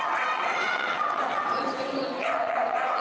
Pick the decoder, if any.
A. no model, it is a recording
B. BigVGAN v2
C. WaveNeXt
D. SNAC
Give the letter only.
C